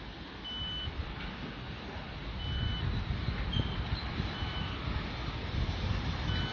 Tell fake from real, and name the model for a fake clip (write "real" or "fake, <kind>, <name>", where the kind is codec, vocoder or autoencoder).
real